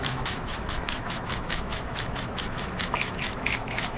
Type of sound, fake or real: fake